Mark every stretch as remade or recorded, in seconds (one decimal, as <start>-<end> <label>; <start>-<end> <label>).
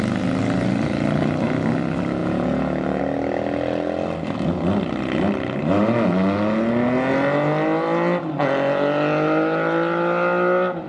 0.0-2.2 recorded; 2.2-3.0 remade; 3.0-10.9 recorded